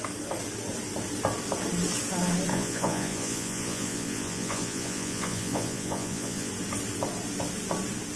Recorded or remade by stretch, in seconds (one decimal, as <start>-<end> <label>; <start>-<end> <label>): 0.0-2.5 recorded; 2.5-6.5 remade; 6.5-8.2 recorded